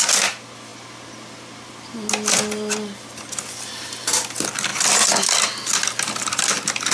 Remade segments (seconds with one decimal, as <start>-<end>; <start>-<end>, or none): none